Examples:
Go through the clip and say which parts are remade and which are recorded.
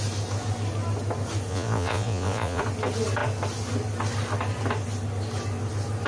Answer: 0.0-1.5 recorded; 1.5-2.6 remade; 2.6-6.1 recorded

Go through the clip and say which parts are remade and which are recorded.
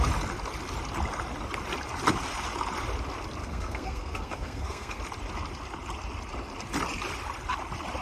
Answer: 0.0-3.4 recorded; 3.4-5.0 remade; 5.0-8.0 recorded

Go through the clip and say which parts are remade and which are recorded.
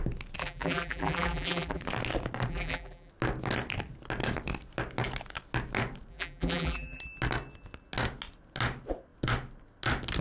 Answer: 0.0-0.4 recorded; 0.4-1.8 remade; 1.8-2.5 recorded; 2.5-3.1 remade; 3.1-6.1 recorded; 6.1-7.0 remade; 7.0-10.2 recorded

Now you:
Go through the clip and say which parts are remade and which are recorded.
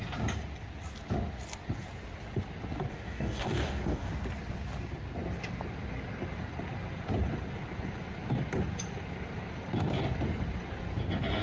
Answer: 0.0-2.9 recorded; 2.9-4.1 remade; 4.1-11.4 recorded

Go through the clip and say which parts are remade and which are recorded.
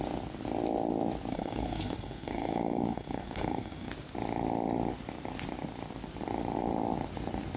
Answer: 0.0-1.3 recorded; 1.3-3.9 remade; 3.9-7.6 recorded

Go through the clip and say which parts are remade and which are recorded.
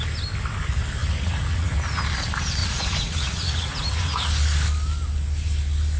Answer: 0.0-1.0 recorded; 1.0-2.0 remade; 2.0-2.6 recorded; 2.6-4.3 remade; 4.3-6.0 recorded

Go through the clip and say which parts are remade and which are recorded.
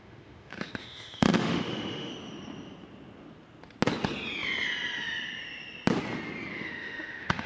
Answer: 0.0-2.1 remade; 2.1-6.5 recorded; 6.5-7.5 remade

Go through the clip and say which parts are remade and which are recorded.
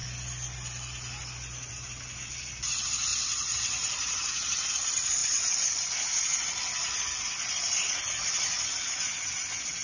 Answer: 0.0-3.1 recorded; 3.1-4.2 remade; 4.2-5.2 recorded; 5.2-5.8 remade; 5.8-9.8 recorded